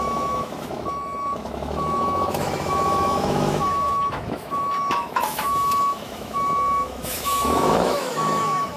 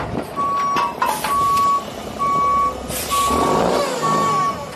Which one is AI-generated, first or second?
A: first